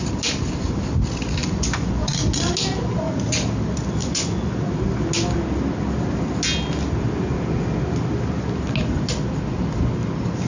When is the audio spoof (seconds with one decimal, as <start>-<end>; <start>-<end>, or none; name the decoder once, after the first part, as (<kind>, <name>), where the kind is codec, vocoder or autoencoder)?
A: 1.4-2.1 (vocoder, Vocos); 4.0-4.5